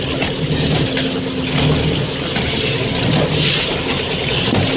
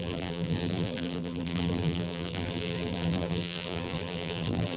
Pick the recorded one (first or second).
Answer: first